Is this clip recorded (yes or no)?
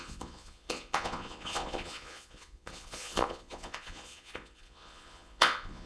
no